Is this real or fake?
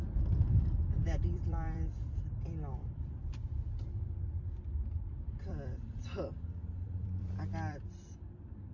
fake